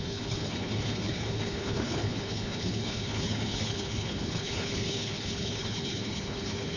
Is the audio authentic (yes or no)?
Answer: no